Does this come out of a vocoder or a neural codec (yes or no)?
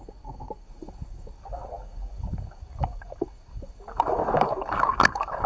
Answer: yes